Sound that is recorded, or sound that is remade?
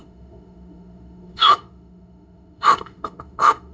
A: remade